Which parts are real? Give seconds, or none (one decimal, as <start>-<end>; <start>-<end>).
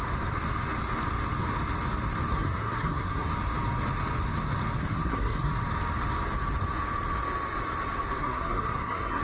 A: 0.0-2.3; 3.3-4.8; 5.5-8.2